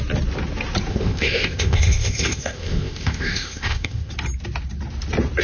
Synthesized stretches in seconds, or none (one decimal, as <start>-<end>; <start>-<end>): 0.9-4.1